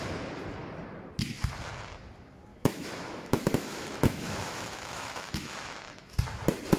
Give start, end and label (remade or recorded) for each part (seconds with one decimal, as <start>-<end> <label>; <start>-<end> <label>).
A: 0.0-2.5 recorded; 2.5-6.1 remade; 6.1-6.8 recorded